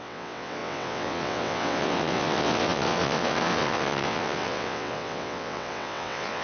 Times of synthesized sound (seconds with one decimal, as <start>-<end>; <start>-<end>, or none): 0.0-6.4